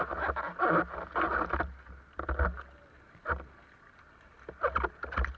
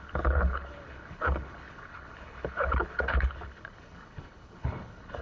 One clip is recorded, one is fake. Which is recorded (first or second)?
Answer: first